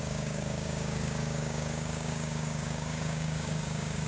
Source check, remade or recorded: remade